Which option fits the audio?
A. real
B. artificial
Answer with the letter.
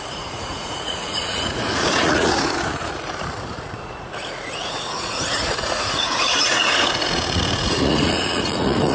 B